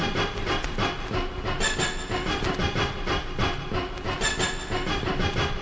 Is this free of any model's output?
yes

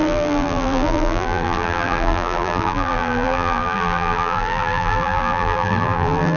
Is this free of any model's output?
no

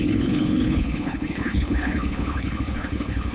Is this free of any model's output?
no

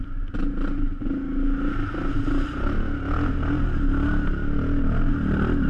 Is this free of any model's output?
yes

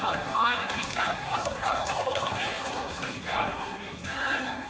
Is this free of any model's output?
no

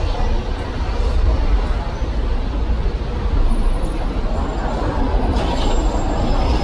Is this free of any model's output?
yes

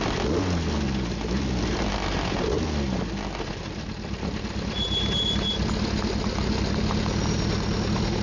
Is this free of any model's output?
yes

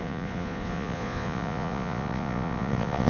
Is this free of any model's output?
no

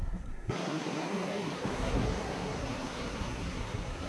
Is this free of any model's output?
no